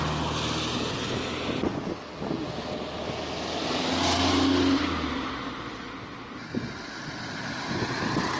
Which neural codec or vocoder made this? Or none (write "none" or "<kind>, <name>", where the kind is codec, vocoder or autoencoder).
none